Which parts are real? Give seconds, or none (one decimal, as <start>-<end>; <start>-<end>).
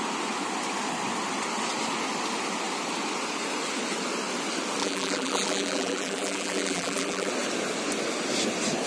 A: 0.0-4.8; 7.3-8.9